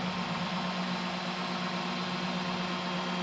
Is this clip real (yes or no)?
yes